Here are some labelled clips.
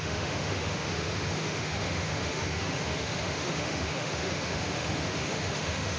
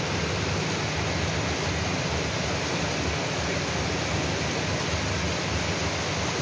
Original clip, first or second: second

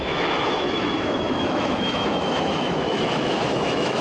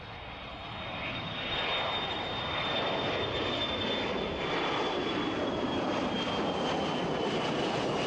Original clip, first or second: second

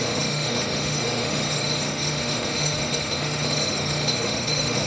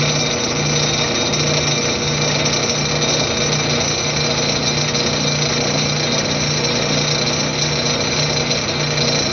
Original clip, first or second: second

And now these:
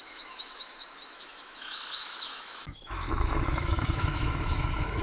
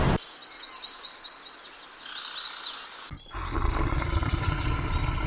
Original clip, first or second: second